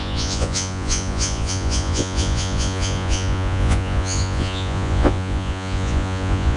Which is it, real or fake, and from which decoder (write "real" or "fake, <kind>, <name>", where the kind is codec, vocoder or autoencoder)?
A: fake, vocoder, Vocos